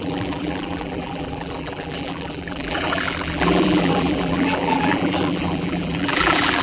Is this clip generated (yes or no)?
yes